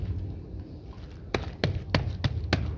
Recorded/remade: recorded